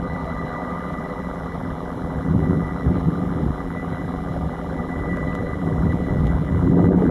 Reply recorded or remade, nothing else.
remade